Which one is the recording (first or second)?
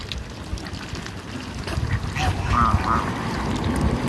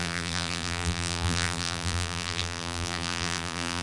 first